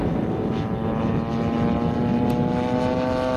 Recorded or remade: recorded